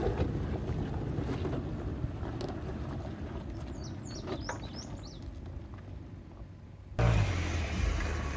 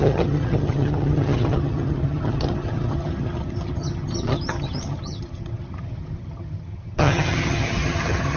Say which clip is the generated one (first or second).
second